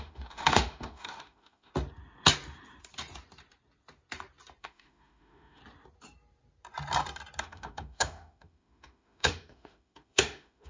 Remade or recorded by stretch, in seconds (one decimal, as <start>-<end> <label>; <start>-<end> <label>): 0.0-1.7 remade; 1.7-4.6 recorded; 4.6-5.6 remade; 5.6-7.4 recorded; 7.4-10.7 remade